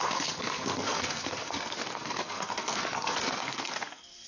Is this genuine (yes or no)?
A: no